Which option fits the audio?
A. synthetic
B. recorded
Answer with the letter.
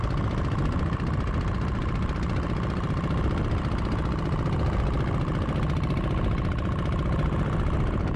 B